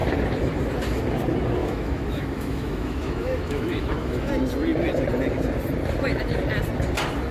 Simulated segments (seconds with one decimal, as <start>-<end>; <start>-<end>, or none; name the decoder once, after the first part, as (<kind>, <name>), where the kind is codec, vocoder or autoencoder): 1.6-4.3 (autoencoder, DAC-VAE)